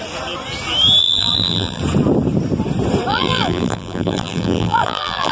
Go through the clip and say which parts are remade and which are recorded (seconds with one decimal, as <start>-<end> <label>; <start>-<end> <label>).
0.0-1.0 recorded; 1.0-1.8 remade; 1.8-3.1 recorded; 3.1-5.3 remade